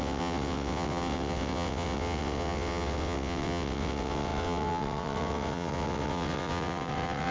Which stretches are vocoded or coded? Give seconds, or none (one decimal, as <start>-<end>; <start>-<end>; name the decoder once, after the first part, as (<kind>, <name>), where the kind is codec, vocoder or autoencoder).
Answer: 0.0-7.3 (vocoder, WaveNeXt)